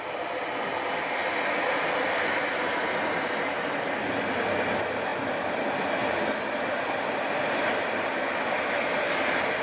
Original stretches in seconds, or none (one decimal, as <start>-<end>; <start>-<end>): 0.0-9.6